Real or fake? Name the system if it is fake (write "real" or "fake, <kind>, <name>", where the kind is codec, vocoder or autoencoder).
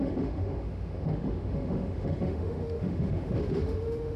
fake, autoencoder, DAC-VAE